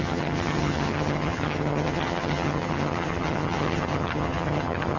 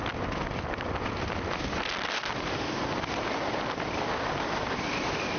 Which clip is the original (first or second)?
second